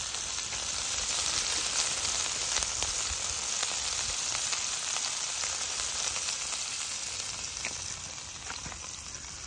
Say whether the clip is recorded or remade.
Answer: recorded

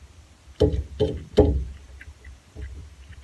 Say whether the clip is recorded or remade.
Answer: recorded